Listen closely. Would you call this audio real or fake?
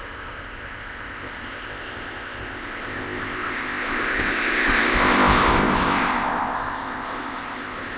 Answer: fake